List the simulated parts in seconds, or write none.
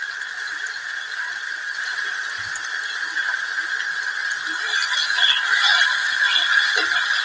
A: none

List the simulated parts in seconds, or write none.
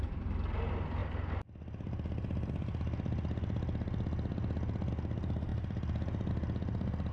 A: none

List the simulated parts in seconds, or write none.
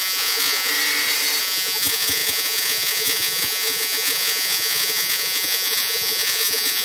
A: 0.0-0.7 (vocoder, Vocos); 1.4-6.8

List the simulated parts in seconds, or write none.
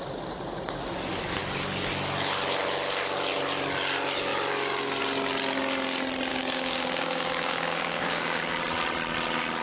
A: 6.3-8.6 (codec, DAC)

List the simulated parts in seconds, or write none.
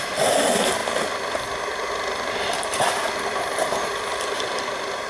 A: none